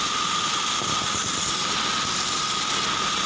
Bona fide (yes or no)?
yes